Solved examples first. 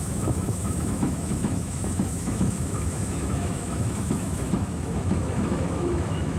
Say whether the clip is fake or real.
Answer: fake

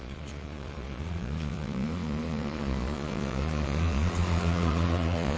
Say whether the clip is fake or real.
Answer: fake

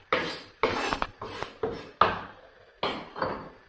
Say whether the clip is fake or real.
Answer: real